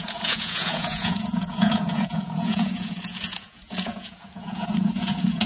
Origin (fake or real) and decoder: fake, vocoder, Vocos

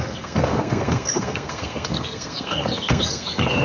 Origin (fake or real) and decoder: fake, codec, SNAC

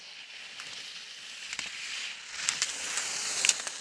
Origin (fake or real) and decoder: real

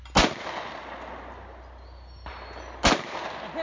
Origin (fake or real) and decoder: real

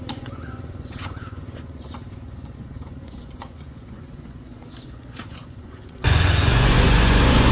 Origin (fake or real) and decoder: fake, vocoder, Vocos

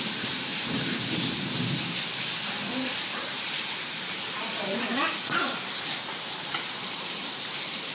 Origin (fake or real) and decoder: fake, vocoder, BigVGAN v2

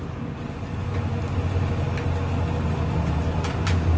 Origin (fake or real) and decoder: real